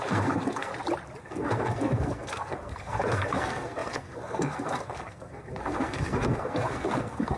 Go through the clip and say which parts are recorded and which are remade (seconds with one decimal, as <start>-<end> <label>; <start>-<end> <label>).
0.0-0.7 remade; 0.7-1.2 recorded; 1.2-7.4 remade